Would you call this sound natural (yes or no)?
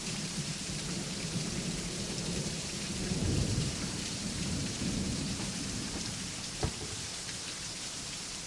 no